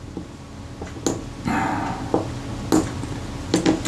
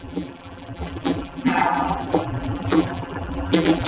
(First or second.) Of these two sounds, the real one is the first